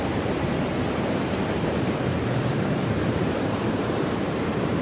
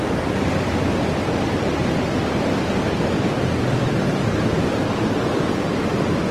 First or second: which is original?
second